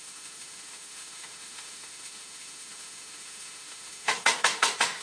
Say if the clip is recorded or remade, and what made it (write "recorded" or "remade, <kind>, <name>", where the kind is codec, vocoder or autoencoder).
remade, autoencoder, DAC-VAE